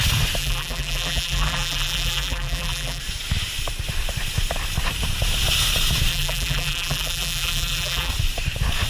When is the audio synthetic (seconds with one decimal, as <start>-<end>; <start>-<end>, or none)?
0.4-3.0; 6.1-8.1